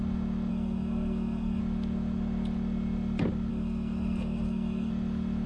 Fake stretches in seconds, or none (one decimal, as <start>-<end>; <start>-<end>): 0.5-1.6; 3.5-4.9